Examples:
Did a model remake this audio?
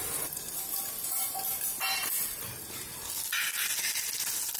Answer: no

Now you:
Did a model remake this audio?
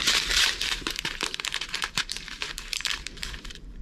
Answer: yes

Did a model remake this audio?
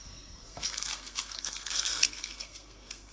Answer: yes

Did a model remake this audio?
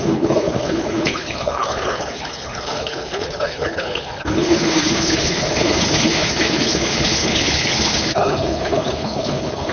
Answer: yes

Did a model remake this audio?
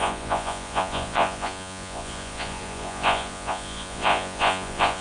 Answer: yes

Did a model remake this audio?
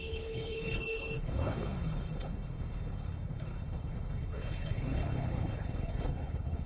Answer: yes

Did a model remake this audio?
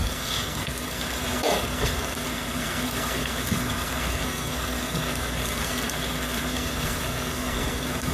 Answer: yes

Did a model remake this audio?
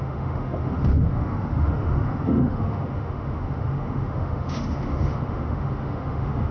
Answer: yes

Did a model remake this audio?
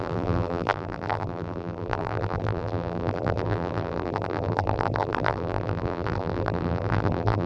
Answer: yes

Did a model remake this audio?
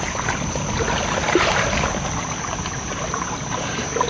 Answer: no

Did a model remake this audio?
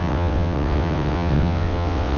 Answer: yes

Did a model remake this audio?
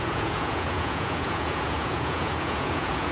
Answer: yes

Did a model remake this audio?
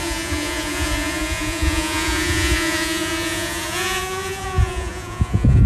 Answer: yes